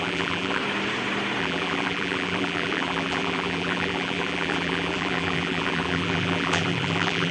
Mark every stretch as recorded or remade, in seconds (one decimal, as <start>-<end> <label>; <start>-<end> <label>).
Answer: 0.0-0.6 remade; 0.6-1.4 recorded; 1.4-7.3 remade